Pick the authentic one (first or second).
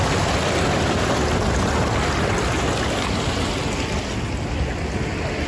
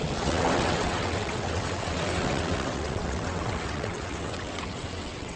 first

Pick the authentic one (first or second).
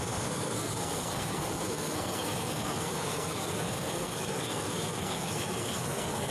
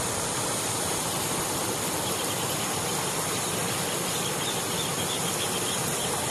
second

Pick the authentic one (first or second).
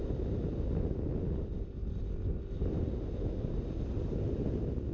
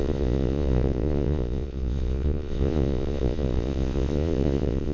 first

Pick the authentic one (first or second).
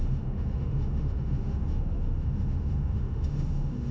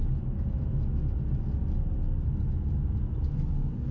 second